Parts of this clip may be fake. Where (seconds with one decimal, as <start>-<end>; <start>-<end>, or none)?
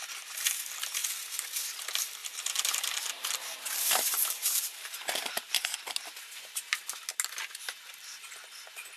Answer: 2.2-5.6